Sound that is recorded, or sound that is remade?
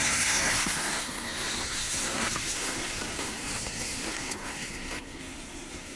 remade